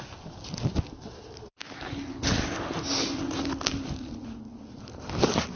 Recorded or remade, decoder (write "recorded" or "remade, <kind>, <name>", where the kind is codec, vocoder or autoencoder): recorded